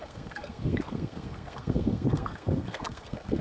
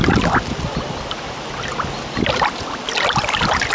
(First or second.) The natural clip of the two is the second